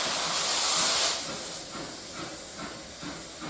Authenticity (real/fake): real